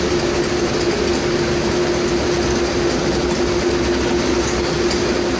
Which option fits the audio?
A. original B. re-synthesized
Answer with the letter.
A